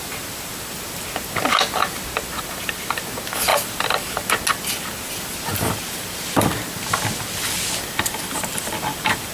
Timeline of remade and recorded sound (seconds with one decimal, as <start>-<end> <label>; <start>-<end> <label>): 0.0-9.3 recorded